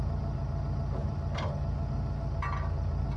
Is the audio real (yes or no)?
yes